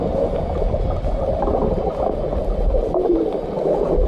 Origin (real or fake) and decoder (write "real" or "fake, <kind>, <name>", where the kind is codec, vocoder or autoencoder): real